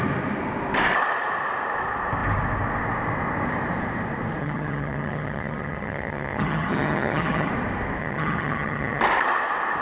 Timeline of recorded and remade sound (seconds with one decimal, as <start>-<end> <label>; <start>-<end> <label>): 0.0-4.4 recorded; 4.4-7.5 remade; 7.5-8.0 recorded; 8.0-9.0 remade; 9.0-9.8 recorded